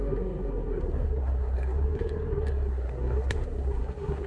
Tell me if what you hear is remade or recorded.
remade